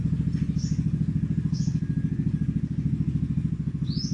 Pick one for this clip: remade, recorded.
recorded